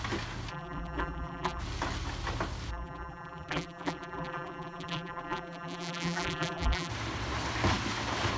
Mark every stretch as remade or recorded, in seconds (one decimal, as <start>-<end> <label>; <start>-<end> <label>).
0.0-0.5 recorded; 0.5-1.6 remade; 1.6-2.7 recorded; 2.7-6.9 remade; 6.9-8.4 recorded